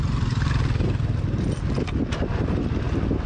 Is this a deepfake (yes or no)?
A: no